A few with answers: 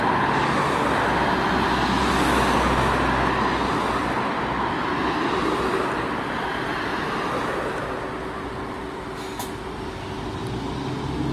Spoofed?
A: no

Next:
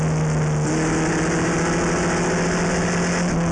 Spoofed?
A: no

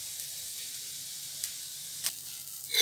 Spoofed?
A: no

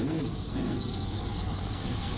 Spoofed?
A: yes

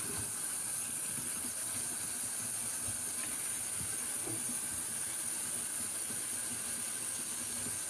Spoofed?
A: no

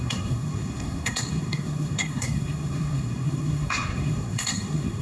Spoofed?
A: yes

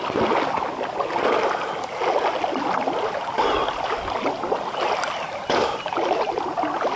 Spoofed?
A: no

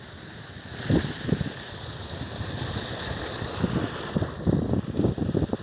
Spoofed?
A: no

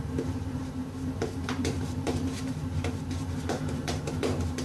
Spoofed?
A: yes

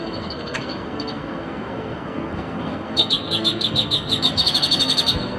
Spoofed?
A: yes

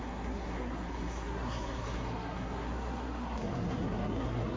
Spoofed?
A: yes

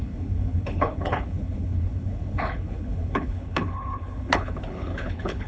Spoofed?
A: yes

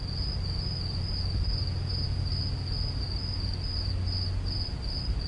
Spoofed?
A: no